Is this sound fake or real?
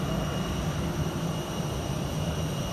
real